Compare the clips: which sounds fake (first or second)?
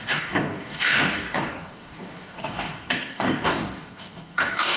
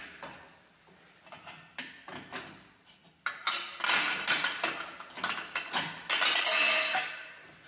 first